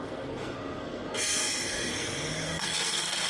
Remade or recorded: remade